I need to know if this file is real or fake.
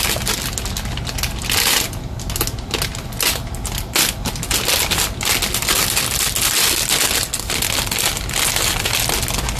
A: real